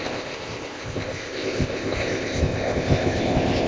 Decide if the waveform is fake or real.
fake